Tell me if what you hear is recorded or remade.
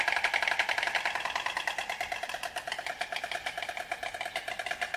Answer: recorded